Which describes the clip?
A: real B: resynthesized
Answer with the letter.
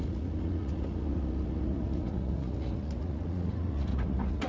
B